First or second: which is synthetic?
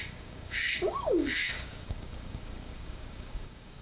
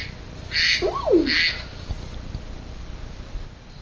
first